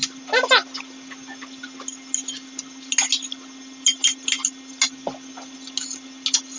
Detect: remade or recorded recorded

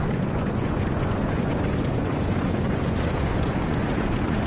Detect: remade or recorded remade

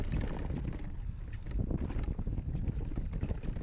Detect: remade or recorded recorded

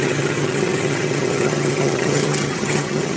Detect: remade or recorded remade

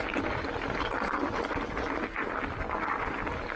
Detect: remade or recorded recorded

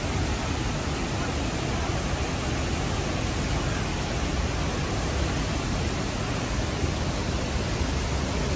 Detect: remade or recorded recorded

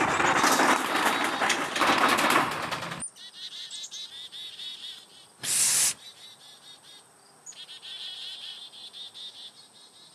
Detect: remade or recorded recorded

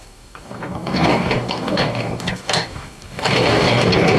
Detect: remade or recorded remade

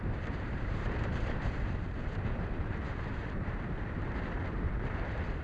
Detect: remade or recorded remade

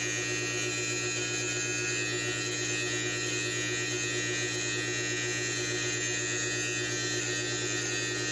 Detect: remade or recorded recorded